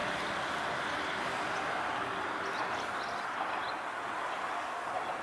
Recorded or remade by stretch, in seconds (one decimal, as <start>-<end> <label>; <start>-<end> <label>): 0.0-5.2 recorded